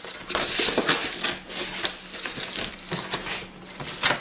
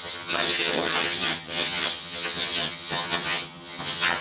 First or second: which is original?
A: first